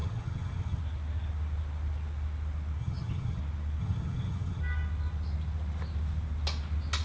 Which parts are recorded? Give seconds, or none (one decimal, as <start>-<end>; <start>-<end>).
0.8-2.8; 3.4-3.8; 4.6-7.0